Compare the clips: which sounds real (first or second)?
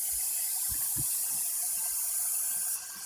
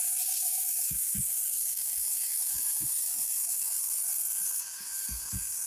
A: first